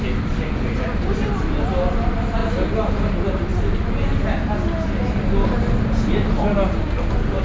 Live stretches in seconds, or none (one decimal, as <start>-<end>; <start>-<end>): 0.0-7.4